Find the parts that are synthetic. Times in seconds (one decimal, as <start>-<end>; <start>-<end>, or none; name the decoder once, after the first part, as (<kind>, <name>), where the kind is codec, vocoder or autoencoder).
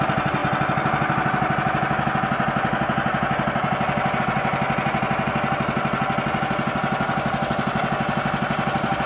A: none